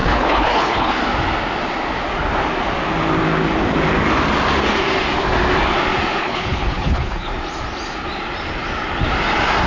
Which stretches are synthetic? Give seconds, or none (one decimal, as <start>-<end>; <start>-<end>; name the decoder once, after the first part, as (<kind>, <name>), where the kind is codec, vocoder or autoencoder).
0.0-1.0 (codec, HILCodec); 6.2-7.3